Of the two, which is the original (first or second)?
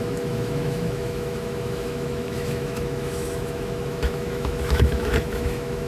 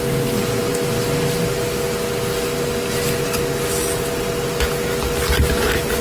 second